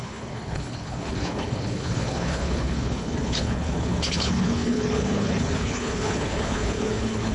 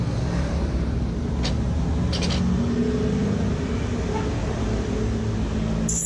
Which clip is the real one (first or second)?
second